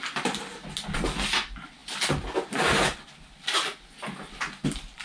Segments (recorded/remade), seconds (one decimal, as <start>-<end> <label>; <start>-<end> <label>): 0.0-5.0 recorded